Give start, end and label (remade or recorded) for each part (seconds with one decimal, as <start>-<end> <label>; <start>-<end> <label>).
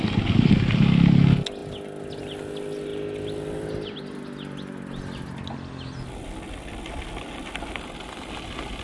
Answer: 0.0-8.8 recorded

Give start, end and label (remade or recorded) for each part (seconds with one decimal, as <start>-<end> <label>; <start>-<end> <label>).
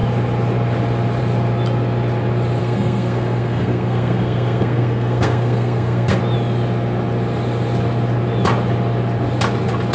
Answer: 0.0-2.6 recorded; 2.6-6.2 remade; 6.2-9.9 recorded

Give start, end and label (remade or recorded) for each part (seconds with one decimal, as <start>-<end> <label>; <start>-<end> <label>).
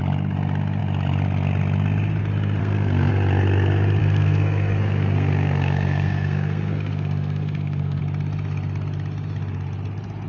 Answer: 0.0-2.6 recorded; 2.6-3.1 remade; 3.1-4.0 recorded; 4.0-8.0 remade; 8.0-10.3 recorded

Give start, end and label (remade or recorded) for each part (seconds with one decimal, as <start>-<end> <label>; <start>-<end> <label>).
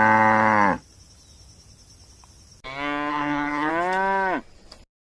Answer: 0.0-3.1 recorded; 3.1-3.7 remade; 3.7-5.1 recorded